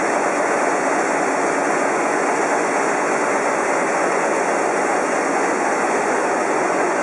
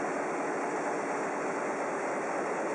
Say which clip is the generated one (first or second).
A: first